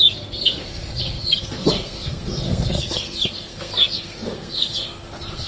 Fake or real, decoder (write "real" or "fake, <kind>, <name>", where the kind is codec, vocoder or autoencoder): fake, codec, SNAC